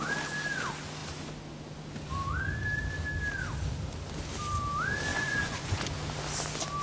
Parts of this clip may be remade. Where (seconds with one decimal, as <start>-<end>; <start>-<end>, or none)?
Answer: 5.1-5.9